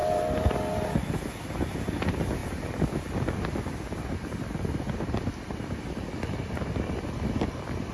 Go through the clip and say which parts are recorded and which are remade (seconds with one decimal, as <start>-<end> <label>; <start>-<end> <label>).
0.0-7.9 recorded